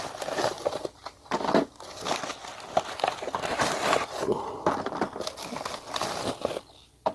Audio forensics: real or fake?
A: real